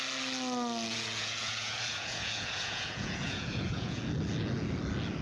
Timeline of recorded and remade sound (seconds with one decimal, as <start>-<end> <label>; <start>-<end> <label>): 0.0-0.9 recorded; 0.9-4.0 remade; 4.0-5.2 recorded